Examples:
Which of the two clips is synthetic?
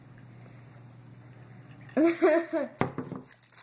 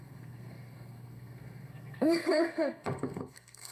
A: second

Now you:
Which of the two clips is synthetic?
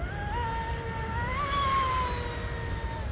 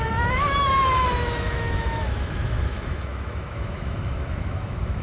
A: second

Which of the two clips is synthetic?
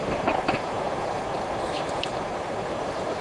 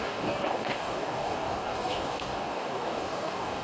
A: second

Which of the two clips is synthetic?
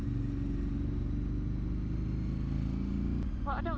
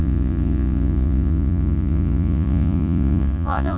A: second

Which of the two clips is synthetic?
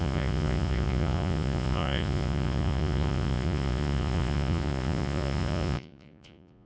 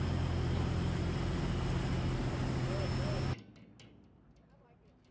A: first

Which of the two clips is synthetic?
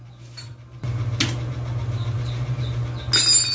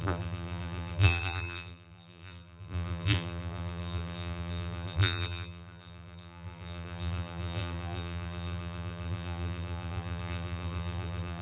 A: second